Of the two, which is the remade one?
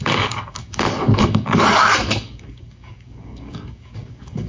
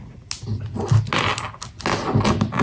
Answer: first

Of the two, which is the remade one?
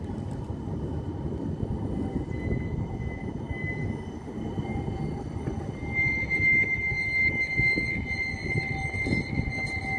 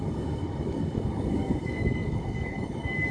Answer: second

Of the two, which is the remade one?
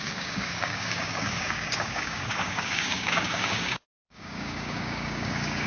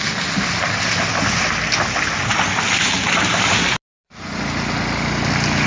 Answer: first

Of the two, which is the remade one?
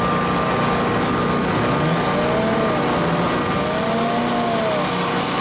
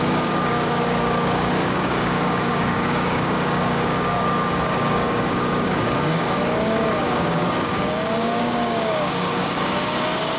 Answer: second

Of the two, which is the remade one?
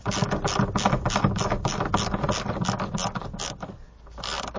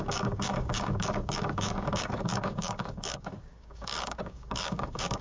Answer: second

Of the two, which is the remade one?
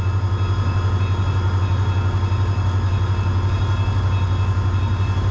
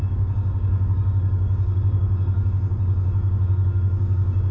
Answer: second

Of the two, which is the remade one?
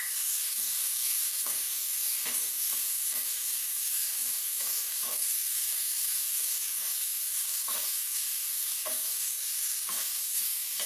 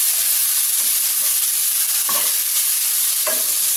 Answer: first